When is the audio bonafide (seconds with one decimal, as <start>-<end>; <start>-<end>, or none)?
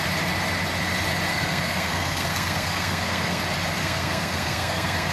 0.0-1.3; 3.4-3.8